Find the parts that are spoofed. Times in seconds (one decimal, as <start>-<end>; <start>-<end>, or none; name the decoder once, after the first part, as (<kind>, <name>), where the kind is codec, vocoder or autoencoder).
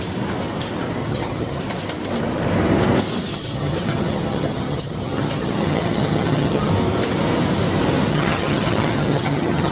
1.0-1.6 (vocoder, HiFi-GAN); 3.3-6.7; 8.1-9.7